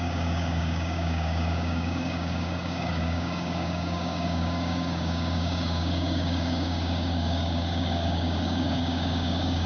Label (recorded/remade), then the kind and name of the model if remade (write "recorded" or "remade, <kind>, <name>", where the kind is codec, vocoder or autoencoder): remade, codec, DAC